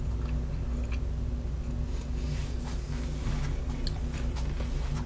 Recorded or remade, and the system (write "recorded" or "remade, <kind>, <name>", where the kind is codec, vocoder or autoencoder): recorded